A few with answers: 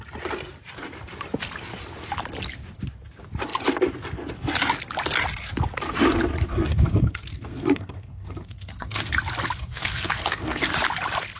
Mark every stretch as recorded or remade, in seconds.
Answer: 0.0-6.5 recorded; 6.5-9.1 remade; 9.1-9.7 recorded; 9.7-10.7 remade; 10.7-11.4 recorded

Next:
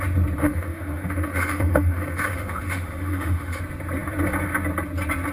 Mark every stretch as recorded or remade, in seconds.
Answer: 0.0-0.4 recorded; 0.4-3.6 remade; 3.6-5.3 recorded

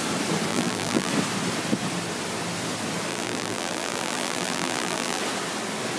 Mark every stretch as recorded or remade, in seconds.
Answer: 0.0-0.5 recorded; 0.5-1.1 remade; 1.1-3.1 recorded; 3.1-5.2 remade; 5.2-6.0 recorded

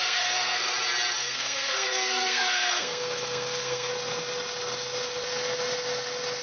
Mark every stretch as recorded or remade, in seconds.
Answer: 0.0-0.7 remade; 0.7-1.2 recorded; 1.2-3.9 remade; 3.9-6.4 recorded

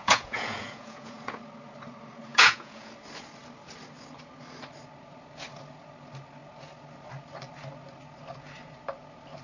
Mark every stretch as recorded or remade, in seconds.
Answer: 0.0-1.4 remade; 1.4-2.3 recorded; 2.3-2.9 remade; 2.9-9.4 recorded